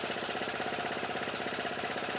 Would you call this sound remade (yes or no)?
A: yes